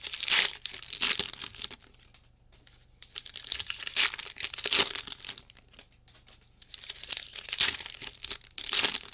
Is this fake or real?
real